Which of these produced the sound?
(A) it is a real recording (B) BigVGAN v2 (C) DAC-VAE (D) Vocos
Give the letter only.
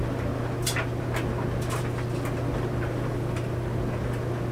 A